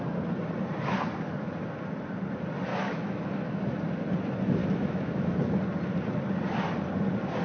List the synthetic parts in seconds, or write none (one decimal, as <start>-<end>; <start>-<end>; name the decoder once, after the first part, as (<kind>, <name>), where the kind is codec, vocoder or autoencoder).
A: 2.7-3.8 (autoencoder, DAC-VAE); 4.6-5.6